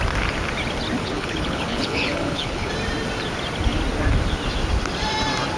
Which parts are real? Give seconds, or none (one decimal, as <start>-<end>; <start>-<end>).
0.0-1.0; 2.7-5.6